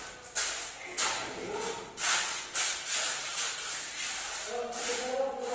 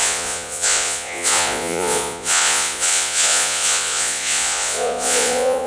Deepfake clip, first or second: second